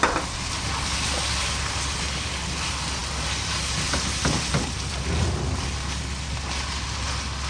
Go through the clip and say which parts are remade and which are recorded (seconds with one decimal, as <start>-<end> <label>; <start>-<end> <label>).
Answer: 0.0-7.5 recorded